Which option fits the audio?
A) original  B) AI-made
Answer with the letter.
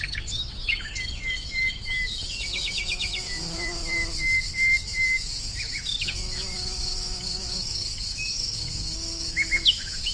B